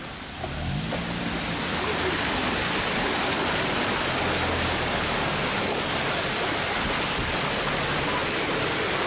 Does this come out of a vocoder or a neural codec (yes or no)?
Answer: no